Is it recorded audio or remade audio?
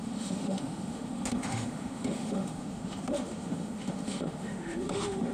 remade